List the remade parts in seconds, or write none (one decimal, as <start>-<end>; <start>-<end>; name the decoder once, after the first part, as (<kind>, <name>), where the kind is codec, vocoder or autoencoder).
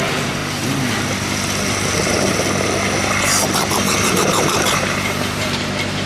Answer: 0.0-0.4 (vocoder, BigVGAN v2); 4.1-6.1